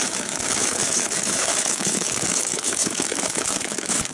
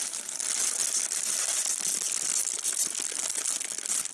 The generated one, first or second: first